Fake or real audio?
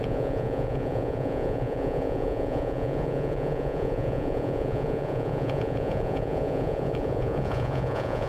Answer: fake